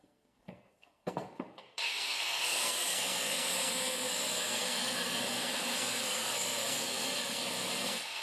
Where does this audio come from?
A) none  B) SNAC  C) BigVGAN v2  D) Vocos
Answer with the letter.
B